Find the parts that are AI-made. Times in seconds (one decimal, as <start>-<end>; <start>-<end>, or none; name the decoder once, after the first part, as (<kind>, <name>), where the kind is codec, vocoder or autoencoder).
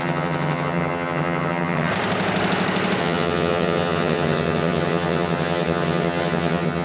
0.0-1.9 (vocoder, HiFi-GAN); 3.0-6.8